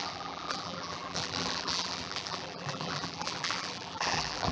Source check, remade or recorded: remade